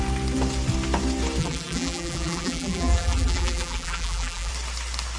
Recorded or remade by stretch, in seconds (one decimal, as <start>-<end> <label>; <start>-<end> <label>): 0.0-1.4 recorded; 1.4-4.5 remade; 4.5-5.2 recorded